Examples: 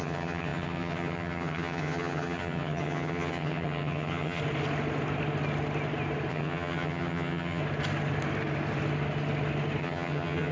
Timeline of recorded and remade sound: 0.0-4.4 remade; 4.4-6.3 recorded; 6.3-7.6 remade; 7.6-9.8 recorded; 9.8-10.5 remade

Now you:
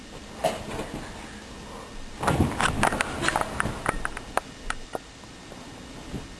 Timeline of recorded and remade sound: 0.0-6.4 recorded

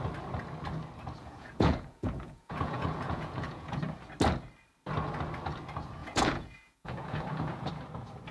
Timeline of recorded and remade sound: 0.0-1.2 recorded; 1.2-3.8 remade; 3.8-6.0 recorded; 6.0-7.7 remade; 7.7-8.3 recorded

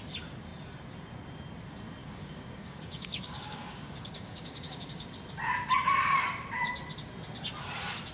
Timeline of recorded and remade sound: 0.0-2.0 recorded; 2.0-5.1 remade; 5.1-8.1 recorded

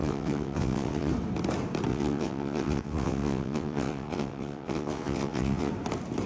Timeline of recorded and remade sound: 0.0-1.1 remade; 1.1-1.9 recorded; 1.9-5.7 remade; 5.7-6.3 recorded

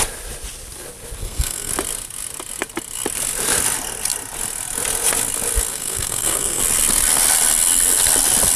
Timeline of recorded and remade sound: 0.0-1.2 recorded; 1.2-1.7 remade; 1.7-5.7 recorded; 5.7-6.6 remade; 6.6-8.6 recorded

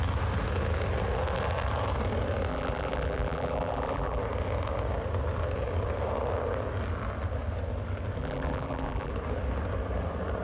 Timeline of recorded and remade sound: 0.0-2.5 recorded; 2.5-4.2 remade; 4.2-8.2 recorded; 8.2-9.1 remade; 9.1-10.4 recorded

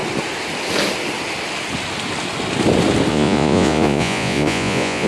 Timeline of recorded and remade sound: 0.0-3.1 recorded; 3.1-5.1 remade